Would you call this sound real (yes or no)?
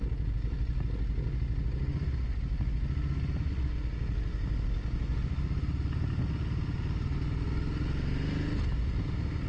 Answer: yes